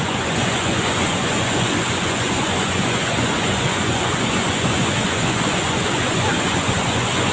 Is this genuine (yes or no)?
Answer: no